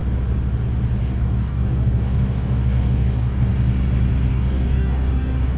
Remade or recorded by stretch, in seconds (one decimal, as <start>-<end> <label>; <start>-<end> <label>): 0.0-1.0 recorded; 1.0-3.5 remade; 3.5-4.3 recorded; 4.3-5.6 remade